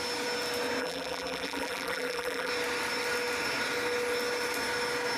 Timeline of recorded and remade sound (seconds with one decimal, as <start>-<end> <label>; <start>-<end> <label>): 0.0-0.8 recorded; 0.8-2.5 remade; 2.5-5.2 recorded